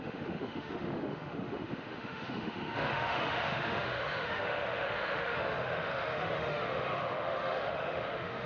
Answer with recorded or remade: remade